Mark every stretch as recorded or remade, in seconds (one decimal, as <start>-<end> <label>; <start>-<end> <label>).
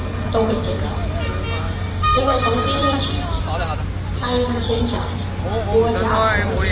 0.0-1.9 recorded; 1.9-2.4 remade; 2.4-4.2 recorded; 4.2-5.1 remade; 5.1-6.7 recorded